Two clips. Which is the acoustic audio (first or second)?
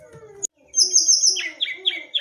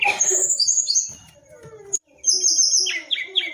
first